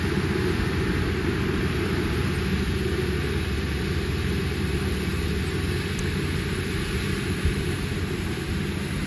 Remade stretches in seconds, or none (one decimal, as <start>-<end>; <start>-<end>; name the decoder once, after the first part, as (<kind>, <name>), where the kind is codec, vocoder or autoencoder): none